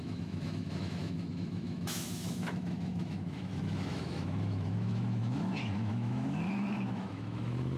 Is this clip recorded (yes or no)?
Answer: no